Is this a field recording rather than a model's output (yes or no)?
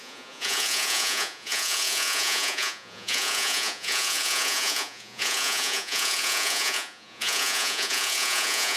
no